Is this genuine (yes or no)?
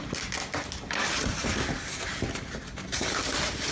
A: yes